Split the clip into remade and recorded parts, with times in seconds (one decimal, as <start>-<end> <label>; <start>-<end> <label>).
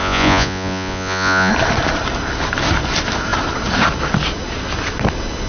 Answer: 0.0-1.5 remade; 1.5-5.5 recorded